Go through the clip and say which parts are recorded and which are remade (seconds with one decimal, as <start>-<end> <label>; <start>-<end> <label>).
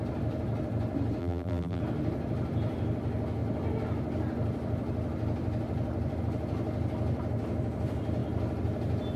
0.0-1.2 recorded; 1.2-1.8 remade; 1.8-9.2 recorded